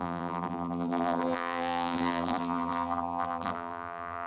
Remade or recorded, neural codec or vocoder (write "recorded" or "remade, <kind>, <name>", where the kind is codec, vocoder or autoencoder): remade, vocoder, BigVGAN v2